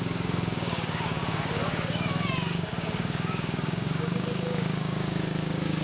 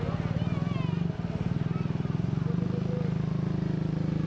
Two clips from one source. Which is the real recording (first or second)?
second